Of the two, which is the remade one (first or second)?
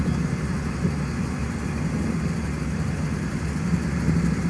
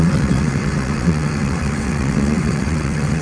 second